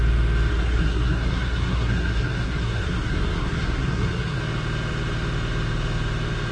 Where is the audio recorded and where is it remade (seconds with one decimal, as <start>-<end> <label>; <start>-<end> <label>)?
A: 0.0-0.5 recorded; 0.5-4.4 remade; 4.4-6.5 recorded